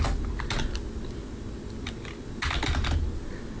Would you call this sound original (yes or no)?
yes